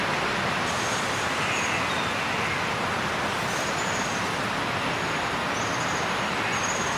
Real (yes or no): yes